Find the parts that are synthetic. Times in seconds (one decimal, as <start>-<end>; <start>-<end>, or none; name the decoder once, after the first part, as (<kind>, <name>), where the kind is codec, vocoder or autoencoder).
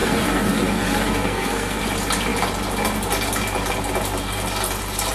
0.0-1.8 (codec, SNAC)